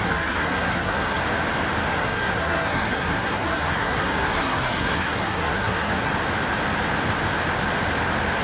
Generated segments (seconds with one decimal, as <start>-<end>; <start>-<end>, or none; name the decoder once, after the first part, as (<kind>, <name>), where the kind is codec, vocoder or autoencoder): 0.0-1.2 (codec, SNAC); 1.9-6.1